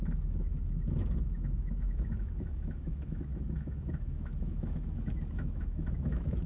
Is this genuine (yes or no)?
no